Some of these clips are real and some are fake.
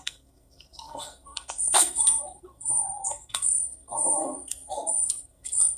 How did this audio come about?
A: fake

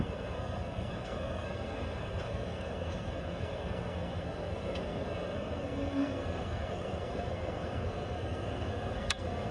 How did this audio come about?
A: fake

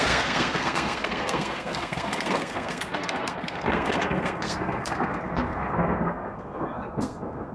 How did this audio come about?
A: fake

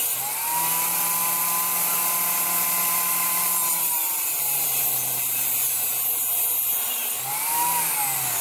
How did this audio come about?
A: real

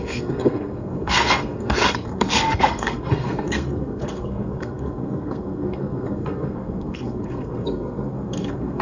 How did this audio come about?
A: fake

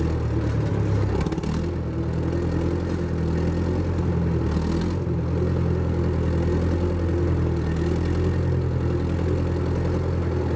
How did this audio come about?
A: real